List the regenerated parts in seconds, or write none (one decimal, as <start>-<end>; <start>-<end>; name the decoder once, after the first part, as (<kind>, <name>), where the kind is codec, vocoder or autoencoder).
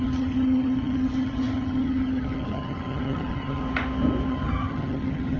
0.0-3.6 (vocoder, HiFi-GAN); 4.3-5.4